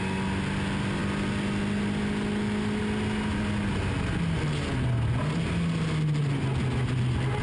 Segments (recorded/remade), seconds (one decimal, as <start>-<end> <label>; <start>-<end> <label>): 0.0-7.4 recorded